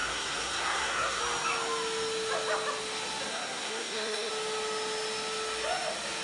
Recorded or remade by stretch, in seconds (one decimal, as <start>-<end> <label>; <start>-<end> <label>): 0.0-1.2 remade; 1.2-3.3 recorded; 3.3-4.3 remade; 4.3-6.2 recorded